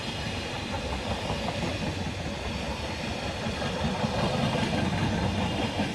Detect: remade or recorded recorded